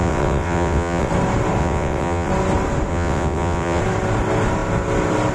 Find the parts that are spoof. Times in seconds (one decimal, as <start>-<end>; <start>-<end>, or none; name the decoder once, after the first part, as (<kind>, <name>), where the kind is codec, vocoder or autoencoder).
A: 0.0-1.1 (vocoder, WaveNeXt); 1.6-2.3; 2.9-3.8